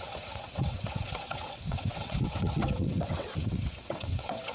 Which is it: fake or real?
fake